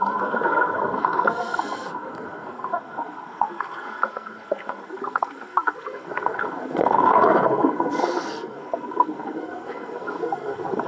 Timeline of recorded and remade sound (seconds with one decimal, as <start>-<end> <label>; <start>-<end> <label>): 0.0-10.9 remade